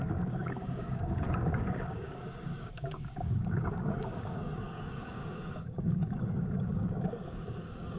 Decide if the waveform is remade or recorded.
remade